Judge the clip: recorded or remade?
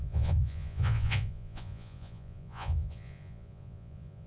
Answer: remade